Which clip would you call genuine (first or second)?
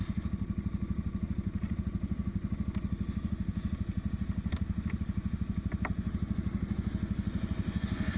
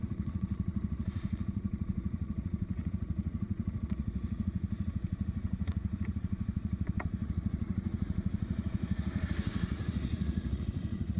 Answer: first